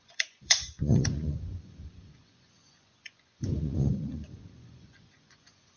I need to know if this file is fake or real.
fake